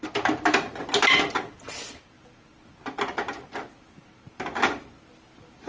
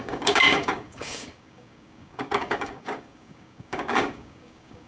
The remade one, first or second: second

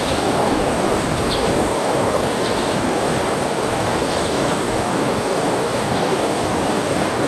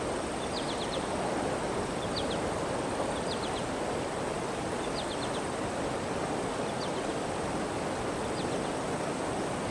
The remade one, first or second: first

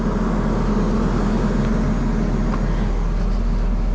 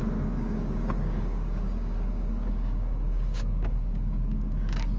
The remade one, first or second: second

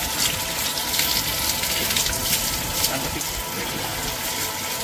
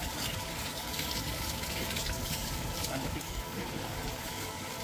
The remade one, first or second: second